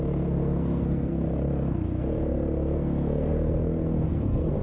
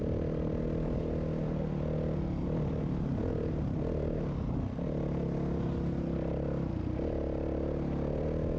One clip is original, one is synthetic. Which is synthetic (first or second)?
first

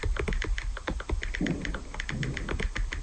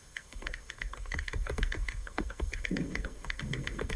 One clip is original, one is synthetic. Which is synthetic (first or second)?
second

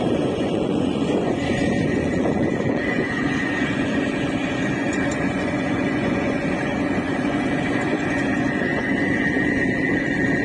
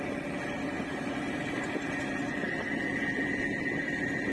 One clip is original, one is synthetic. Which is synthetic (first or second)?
first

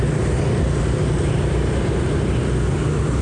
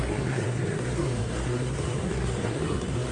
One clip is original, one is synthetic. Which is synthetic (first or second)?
second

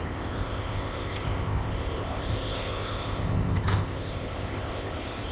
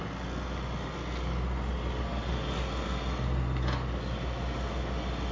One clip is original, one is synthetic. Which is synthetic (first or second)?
first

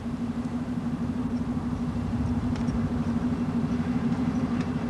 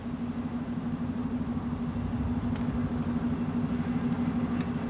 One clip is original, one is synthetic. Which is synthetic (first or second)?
first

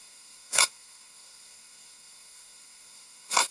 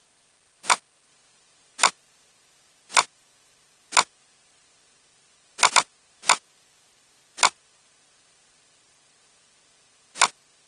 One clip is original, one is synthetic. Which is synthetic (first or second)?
first